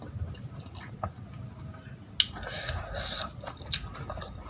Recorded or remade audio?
recorded